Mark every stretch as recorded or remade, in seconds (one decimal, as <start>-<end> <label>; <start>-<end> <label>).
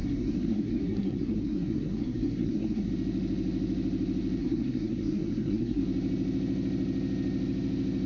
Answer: 0.0-2.9 remade; 2.9-4.4 recorded; 4.4-5.8 remade; 5.8-8.1 recorded